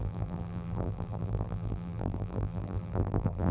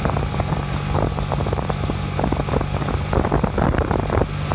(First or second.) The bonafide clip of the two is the second